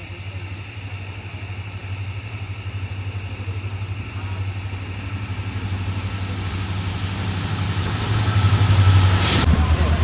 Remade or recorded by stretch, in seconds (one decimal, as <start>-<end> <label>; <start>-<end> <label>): 0.0-10.0 recorded